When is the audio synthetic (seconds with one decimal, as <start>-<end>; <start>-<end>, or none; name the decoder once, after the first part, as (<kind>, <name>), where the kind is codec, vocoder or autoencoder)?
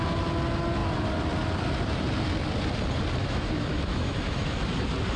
3.2-4.6 (autoencoder, DAC-VAE)